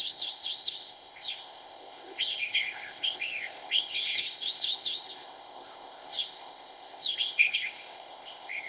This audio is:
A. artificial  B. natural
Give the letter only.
A